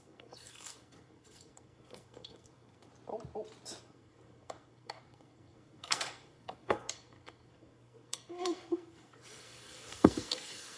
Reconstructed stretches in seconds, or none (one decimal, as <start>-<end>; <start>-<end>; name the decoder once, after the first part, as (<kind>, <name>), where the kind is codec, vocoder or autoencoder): 0.0-2.9 (codec, SNAC); 3.8-10.8